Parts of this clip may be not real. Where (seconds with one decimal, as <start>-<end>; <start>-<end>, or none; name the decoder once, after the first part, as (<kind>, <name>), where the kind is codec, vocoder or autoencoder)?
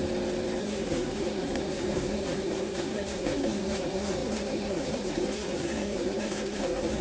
0.6-7.0 (codec, SNAC)